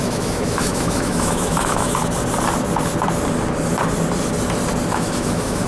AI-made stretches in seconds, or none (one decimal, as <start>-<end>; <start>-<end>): 0.0-2.0; 4.9-5.7

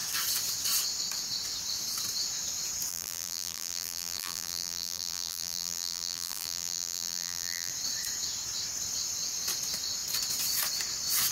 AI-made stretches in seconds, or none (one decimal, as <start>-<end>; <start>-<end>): 2.9-7.7